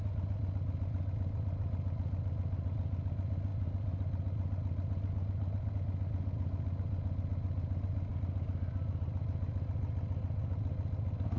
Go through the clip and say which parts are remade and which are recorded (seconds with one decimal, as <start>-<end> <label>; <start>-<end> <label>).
0.0-8.1 recorded; 8.1-9.0 remade; 9.0-11.4 recorded